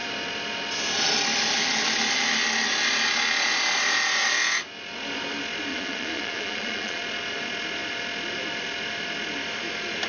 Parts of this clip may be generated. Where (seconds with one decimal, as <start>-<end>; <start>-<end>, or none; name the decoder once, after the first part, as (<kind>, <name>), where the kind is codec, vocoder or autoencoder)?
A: 5.7-7.0 (vocoder, Vocos)